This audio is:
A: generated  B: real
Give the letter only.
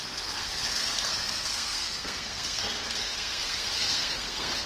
A